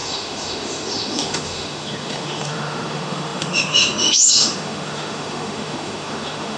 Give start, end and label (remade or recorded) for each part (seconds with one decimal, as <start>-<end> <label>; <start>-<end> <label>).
0.0-6.6 remade